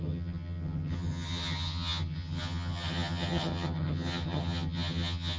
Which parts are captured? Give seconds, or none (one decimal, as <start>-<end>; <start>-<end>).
none